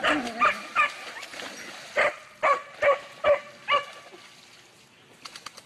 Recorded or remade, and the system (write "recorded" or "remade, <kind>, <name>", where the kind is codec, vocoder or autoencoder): recorded